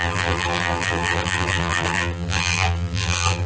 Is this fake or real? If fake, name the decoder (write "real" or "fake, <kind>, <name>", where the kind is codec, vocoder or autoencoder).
fake, vocoder, BigVGAN v2